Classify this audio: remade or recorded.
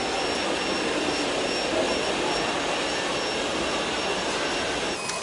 recorded